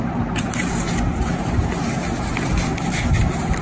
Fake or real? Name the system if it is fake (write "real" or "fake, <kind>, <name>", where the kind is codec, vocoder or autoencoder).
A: real